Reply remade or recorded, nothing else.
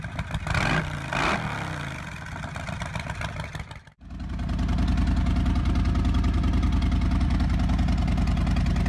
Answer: recorded